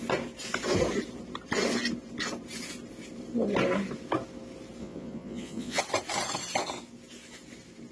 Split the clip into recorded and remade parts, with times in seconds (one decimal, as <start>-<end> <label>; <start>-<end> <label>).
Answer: 0.0-4.8 recorded; 4.8-5.8 remade; 5.8-7.9 recorded